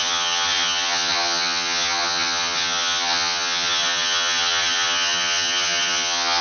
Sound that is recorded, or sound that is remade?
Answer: remade